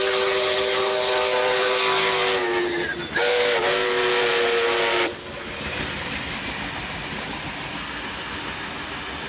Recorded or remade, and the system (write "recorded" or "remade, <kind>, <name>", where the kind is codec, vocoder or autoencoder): recorded